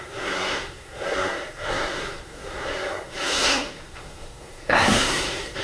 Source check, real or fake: fake